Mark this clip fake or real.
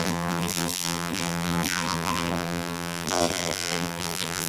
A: fake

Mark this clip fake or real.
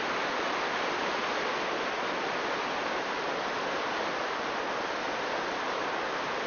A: real